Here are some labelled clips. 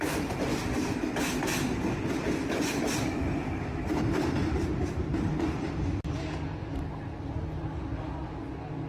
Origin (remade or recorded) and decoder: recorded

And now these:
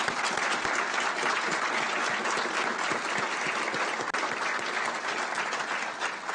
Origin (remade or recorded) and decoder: recorded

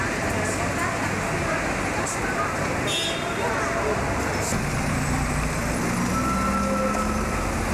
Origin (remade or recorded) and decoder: recorded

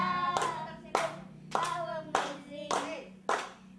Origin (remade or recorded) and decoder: recorded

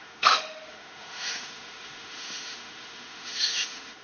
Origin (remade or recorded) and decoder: remade, autoencoder, DAC-VAE